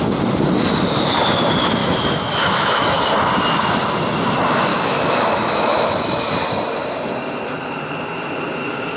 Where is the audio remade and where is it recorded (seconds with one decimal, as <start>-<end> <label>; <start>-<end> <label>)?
0.0-1.8 recorded; 1.8-3.1 remade; 3.1-4.7 recorded; 4.7-6.3 remade; 6.3-9.0 recorded